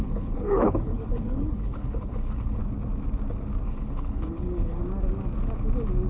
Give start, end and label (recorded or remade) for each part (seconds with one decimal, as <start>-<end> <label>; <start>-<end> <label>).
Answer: 0.0-2.6 remade; 2.6-3.6 recorded; 3.6-4.8 remade; 4.8-6.1 recorded